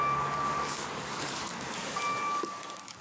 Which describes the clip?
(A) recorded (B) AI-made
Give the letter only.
B